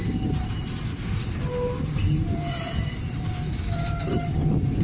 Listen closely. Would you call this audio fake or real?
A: fake